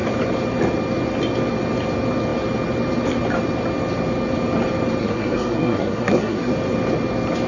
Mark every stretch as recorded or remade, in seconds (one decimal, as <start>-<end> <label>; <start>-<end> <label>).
0.0-5.0 recorded; 5.0-6.5 remade; 6.5-7.5 recorded